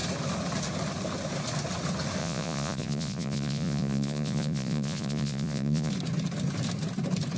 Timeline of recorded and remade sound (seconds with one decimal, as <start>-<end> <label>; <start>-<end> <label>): 0.0-2.2 recorded; 2.2-5.9 remade; 5.9-7.4 recorded